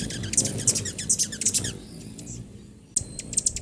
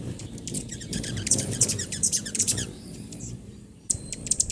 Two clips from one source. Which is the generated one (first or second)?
second